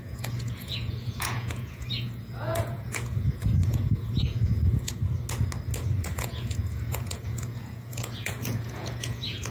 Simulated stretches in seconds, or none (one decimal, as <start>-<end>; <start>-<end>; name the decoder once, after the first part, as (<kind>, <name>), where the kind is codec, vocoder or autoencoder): 0.0-5.0 (vocoder, Vocos); 6.1-9.5